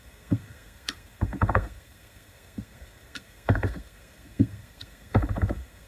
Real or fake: fake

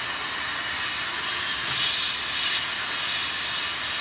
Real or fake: real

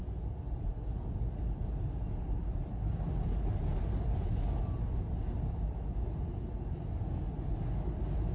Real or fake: real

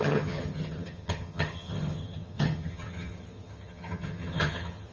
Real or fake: fake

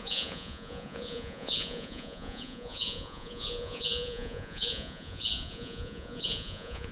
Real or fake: fake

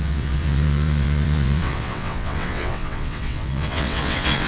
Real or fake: fake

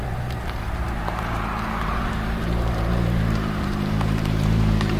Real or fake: fake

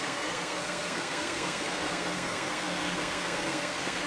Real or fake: fake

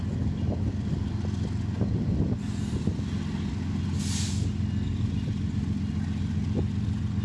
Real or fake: real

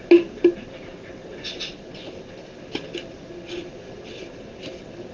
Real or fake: real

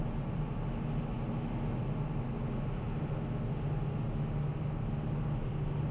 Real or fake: real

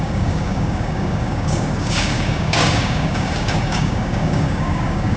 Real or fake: fake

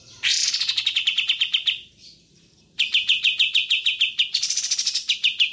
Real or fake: fake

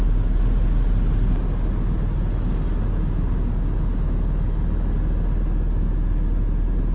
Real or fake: real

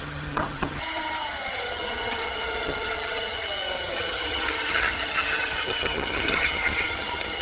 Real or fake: fake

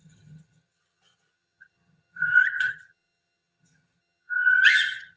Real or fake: fake